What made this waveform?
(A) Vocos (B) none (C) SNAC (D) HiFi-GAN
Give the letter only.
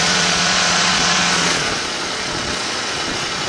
A